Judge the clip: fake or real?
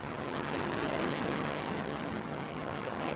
fake